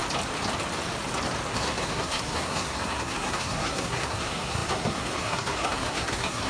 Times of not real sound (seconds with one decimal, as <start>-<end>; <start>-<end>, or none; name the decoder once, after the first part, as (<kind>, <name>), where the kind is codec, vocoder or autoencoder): 1.5-6.5 (codec, SNAC)